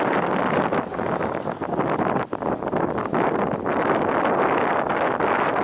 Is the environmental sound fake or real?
real